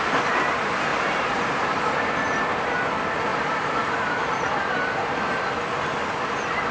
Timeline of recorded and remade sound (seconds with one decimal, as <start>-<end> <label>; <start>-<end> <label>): 0.0-0.9 recorded; 0.9-2.0 remade; 2.0-3.3 recorded; 3.3-5.4 remade; 5.4-6.7 recorded